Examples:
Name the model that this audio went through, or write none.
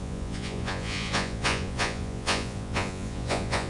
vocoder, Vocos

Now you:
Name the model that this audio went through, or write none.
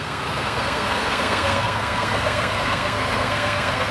codec, SNAC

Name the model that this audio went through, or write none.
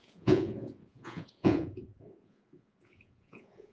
vocoder, Vocos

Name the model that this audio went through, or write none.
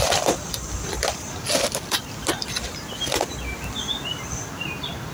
none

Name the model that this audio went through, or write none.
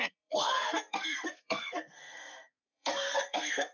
codec, SNAC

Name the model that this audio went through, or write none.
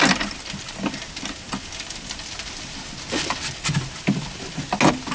none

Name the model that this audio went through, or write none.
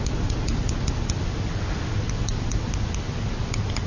none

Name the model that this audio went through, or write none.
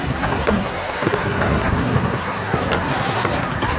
codec, SNAC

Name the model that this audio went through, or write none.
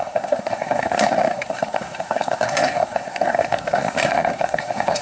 codec, SNAC